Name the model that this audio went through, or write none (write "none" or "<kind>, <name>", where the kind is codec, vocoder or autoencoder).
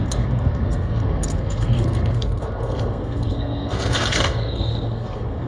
codec, SNAC